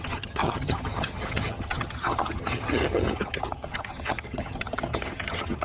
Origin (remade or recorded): remade